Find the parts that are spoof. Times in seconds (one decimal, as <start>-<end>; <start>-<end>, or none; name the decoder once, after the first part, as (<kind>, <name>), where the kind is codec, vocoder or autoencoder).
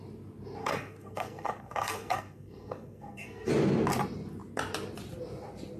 0.6-3.5 (codec, SNAC)